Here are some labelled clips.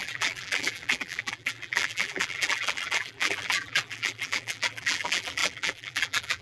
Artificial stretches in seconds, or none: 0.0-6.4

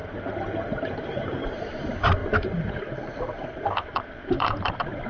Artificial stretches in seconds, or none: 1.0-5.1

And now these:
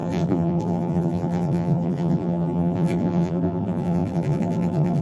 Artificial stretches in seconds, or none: 0.0-5.0

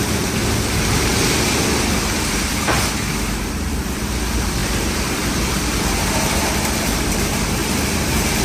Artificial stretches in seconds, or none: 0.0-0.4; 3.5-8.4